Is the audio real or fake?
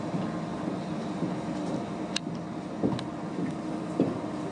real